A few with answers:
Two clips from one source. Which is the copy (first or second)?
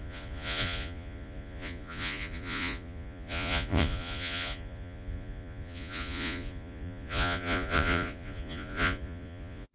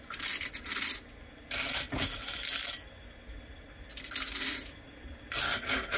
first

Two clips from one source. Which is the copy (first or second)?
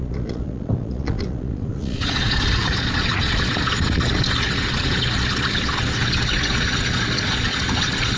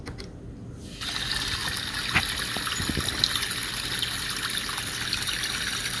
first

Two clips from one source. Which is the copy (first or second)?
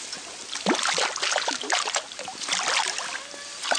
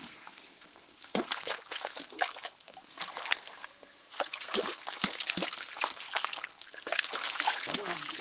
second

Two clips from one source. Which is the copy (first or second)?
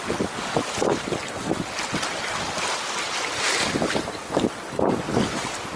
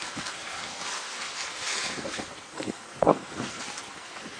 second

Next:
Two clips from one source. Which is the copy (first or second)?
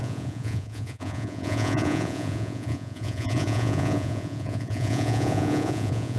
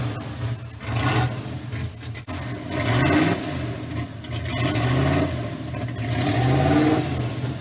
first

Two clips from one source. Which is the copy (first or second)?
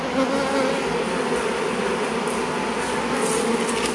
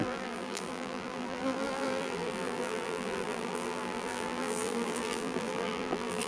second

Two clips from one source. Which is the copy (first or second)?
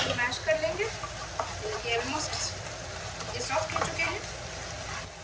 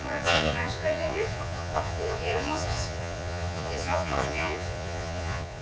second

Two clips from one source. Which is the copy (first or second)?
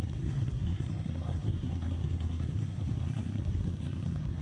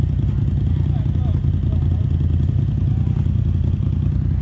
first